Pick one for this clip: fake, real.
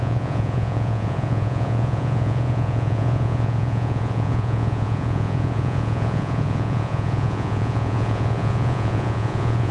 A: fake